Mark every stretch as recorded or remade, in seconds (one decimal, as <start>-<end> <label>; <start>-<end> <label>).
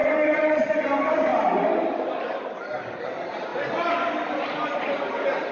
0.0-0.7 remade; 0.7-5.5 recorded